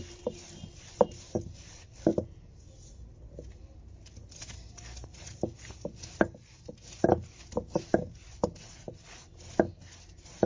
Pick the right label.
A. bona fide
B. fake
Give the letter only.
A